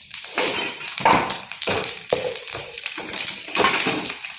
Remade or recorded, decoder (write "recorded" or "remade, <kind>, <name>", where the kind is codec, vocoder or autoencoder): remade, vocoder, BigVGAN v2